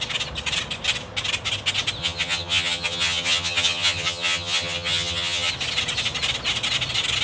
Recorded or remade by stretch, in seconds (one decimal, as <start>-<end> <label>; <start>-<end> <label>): 0.0-2.0 recorded; 2.0-5.5 remade; 5.5-7.2 recorded